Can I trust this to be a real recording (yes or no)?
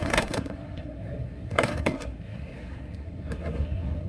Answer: no